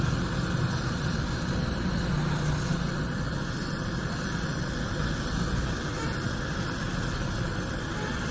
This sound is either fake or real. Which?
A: real